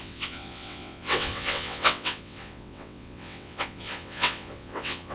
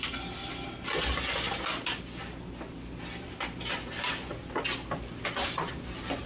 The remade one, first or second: first